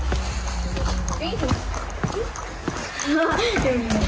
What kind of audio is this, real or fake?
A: real